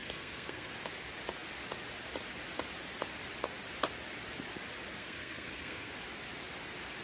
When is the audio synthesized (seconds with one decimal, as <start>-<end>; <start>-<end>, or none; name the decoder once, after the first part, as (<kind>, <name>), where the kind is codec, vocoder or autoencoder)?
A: 0.0-0.7 (codec, SNAC); 5.0-5.9